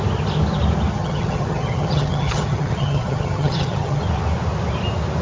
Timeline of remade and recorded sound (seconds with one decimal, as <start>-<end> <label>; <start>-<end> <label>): 0.0-0.9 recorded; 0.9-4.0 remade; 4.0-5.2 recorded